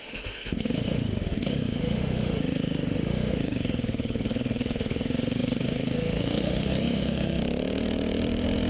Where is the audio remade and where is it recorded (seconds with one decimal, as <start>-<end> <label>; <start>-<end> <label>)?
0.0-7.4 remade; 7.4-8.7 recorded